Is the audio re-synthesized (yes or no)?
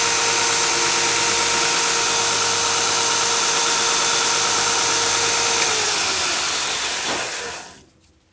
no